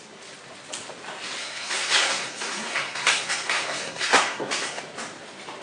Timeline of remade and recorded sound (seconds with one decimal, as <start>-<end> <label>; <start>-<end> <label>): 0.0-1.4 recorded; 1.4-4.8 remade; 4.8-5.6 recorded